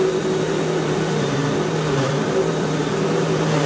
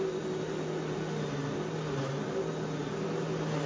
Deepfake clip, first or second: first